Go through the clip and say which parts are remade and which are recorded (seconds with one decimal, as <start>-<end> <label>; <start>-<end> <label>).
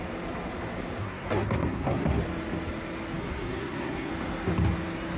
0.0-1.0 recorded; 1.0-2.2 remade; 2.2-3.2 recorded; 3.2-4.1 remade; 4.1-5.2 recorded